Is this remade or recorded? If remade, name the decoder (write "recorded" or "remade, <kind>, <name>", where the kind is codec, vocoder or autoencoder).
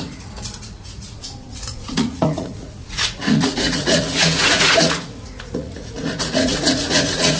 remade, vocoder, Vocos